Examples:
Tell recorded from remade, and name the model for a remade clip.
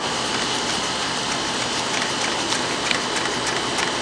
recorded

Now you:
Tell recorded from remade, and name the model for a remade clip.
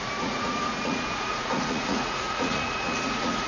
remade, vocoder, Vocos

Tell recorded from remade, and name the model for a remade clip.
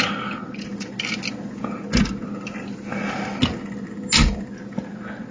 recorded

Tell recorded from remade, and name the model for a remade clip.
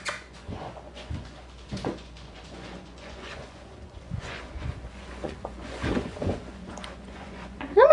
remade, vocoder, Vocos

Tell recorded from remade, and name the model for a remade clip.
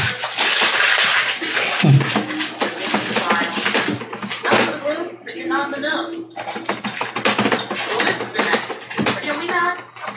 recorded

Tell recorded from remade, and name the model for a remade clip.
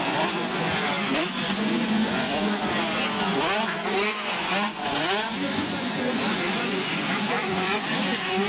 remade, vocoder, Vocos